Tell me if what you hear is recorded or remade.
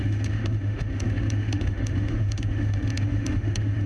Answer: remade